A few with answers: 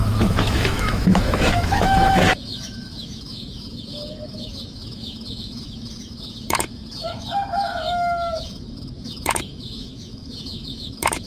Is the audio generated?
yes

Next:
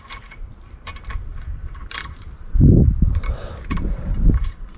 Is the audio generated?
yes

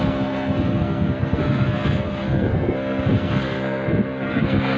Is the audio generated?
yes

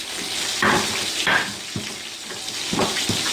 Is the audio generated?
no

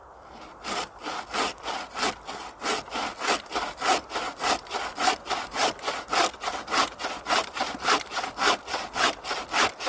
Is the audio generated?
no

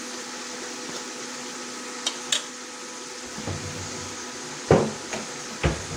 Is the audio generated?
no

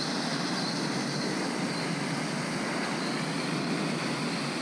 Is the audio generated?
no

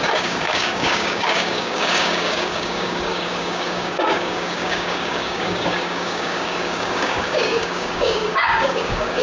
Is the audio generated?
yes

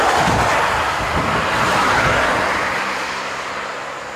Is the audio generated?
no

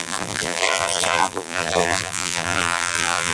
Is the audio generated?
yes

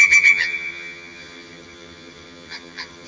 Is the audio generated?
yes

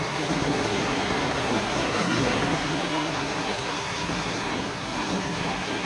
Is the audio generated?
yes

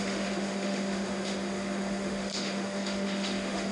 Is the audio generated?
yes